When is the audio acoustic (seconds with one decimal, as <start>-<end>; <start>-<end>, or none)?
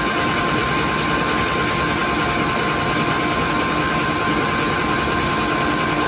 0.0-6.1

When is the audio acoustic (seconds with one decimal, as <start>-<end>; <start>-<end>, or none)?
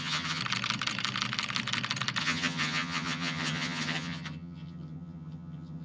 0.4-2.2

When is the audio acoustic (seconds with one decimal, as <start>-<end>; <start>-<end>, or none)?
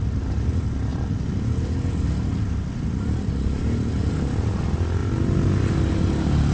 0.0-6.5